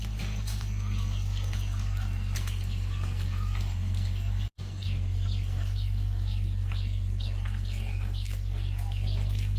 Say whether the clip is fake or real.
fake